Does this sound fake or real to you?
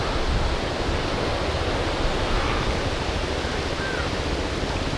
real